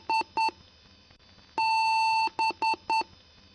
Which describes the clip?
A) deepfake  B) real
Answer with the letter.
B